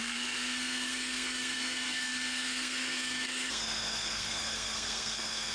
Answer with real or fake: fake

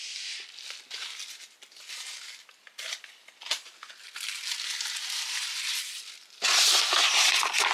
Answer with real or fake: real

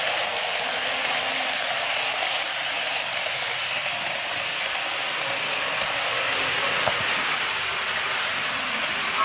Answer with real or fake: real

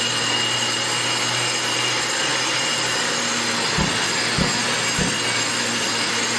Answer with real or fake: real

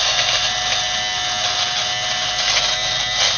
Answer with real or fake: real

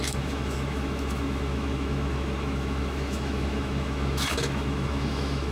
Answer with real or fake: fake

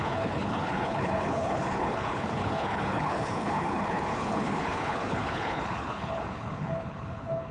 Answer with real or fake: fake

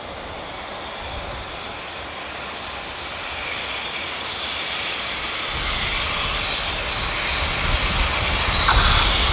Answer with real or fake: real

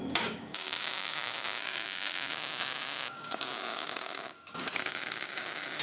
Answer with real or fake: fake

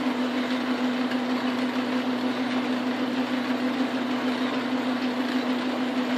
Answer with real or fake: real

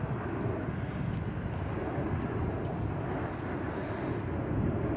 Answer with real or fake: real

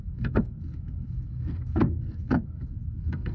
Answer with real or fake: fake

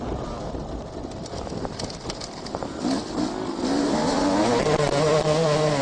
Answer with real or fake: real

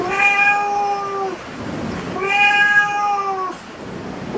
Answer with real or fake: real